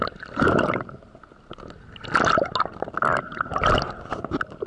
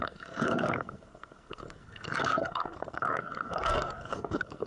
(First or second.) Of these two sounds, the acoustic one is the first